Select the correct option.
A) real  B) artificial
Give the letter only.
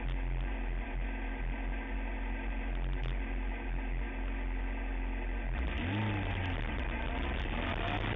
A